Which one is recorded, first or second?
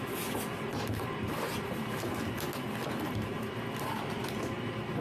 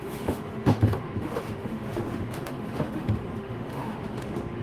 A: first